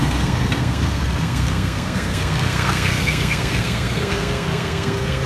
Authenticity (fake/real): fake